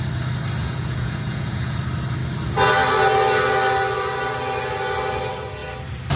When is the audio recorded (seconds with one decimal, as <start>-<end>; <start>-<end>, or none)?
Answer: 0.0-0.6; 1.8-6.2